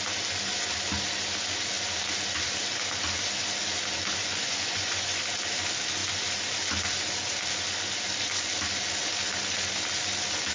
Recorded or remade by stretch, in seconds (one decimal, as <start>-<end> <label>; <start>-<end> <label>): 0.0-4.2 recorded; 4.2-5.2 remade; 5.2-10.5 recorded